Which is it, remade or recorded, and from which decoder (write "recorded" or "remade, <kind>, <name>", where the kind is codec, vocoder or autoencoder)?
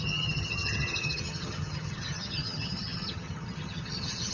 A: remade, vocoder, HiFi-GAN